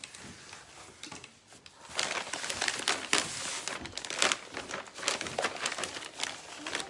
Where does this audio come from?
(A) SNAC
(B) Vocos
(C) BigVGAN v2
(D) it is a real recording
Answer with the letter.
D